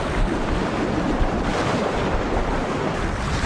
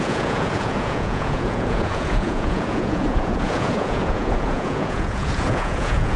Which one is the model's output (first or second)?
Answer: second